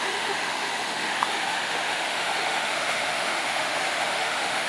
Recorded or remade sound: remade